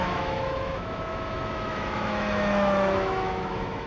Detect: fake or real fake